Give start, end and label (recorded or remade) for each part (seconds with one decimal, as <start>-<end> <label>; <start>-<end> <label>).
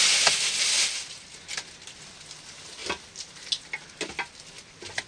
0.0-5.1 recorded